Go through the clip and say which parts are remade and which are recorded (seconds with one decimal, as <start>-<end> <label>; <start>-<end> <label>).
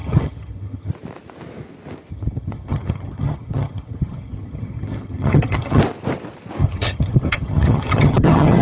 0.0-0.9 remade; 0.9-2.1 recorded; 2.1-5.8 remade; 5.8-6.6 recorded; 6.6-8.6 remade